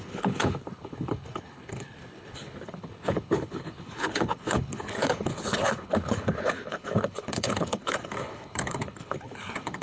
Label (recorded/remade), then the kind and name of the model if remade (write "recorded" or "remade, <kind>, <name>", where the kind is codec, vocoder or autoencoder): remade, codec, HILCodec